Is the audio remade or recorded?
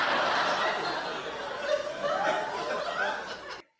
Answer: recorded